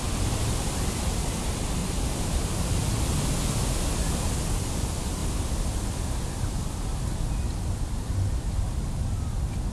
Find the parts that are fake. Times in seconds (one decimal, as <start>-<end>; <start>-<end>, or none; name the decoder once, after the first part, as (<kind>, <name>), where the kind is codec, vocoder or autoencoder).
none